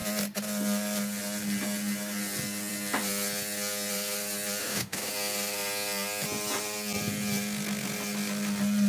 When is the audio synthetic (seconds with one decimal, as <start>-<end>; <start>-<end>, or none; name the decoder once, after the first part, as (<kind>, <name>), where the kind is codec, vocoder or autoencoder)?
4.6-5.1 (autoencoder, DAC-VAE)

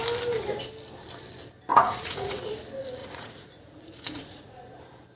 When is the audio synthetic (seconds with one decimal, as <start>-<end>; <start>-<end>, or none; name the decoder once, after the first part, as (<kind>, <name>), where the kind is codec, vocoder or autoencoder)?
1.7-2.4 (vocoder, Vocos); 3.0-4.6

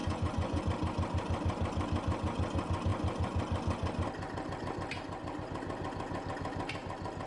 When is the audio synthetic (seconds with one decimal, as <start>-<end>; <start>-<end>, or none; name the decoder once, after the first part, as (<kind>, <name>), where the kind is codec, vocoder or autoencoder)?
0.0-0.6 (vocoder, Vocos)

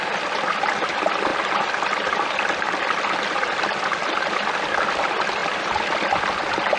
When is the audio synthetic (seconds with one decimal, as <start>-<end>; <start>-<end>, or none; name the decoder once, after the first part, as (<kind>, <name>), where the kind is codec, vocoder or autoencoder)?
none

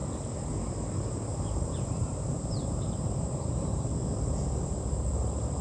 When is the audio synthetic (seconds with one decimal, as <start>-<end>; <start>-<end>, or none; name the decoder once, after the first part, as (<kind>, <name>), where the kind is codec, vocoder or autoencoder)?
1.3-3.9 (vocoder, BigVGAN v2)

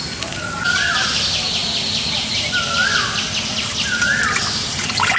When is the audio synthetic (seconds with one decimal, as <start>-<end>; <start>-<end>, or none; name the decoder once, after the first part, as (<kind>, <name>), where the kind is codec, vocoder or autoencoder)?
none

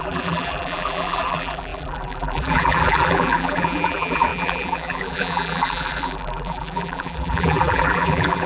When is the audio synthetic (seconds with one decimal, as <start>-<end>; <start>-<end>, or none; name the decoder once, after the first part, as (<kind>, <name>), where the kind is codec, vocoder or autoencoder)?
0.0-8.5 (vocoder, BigVGAN v2)

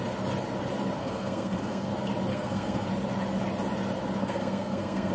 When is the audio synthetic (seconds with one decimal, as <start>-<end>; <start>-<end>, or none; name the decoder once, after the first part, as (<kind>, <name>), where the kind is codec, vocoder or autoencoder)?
1.0-1.9 (codec, SNAC); 2.3-2.9; 4.2-5.1